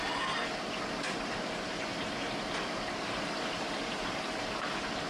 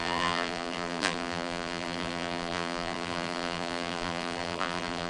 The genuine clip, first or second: first